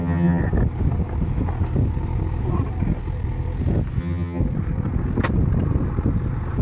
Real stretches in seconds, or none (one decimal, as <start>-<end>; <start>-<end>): 0.4-4.0; 4.4-6.6